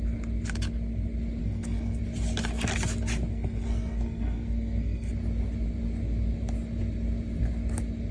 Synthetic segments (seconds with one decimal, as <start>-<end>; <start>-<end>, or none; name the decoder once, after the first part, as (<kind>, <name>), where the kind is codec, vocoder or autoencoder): 1.4-2.0 (codec, SNAC); 3.3-5.1